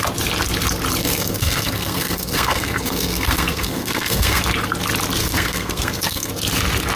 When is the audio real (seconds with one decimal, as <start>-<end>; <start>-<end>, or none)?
0.0-1.0; 4.4-5.2; 6.3-7.0